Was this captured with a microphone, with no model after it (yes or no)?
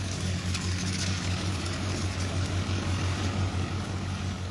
no